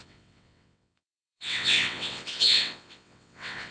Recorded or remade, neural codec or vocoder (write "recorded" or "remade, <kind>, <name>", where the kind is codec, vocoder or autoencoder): remade, vocoder, WaveNeXt